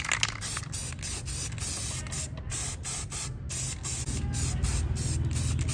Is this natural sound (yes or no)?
yes